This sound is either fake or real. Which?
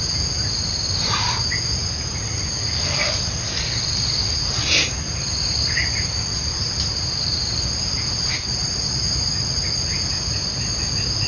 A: real